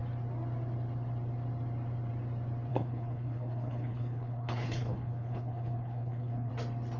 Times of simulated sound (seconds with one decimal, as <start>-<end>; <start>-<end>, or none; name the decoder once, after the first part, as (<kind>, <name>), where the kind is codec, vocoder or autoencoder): 2.7-6.5 (codec, HILCodec)